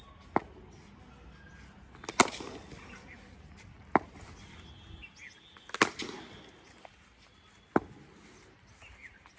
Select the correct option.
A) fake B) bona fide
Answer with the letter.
B